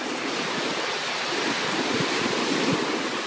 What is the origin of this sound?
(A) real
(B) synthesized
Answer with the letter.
A